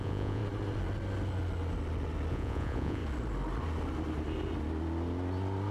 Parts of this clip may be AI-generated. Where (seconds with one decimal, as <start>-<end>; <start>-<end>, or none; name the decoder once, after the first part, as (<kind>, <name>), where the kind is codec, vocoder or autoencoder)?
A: 0.0-0.4 (vocoder, Vocos); 2.3-3.0